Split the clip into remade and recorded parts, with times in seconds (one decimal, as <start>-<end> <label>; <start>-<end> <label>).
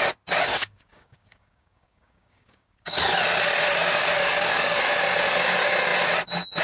0.0-0.5 recorded; 0.5-3.0 remade; 3.0-3.8 recorded; 3.8-4.8 remade; 4.8-6.6 recorded